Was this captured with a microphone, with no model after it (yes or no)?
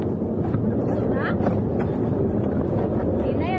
yes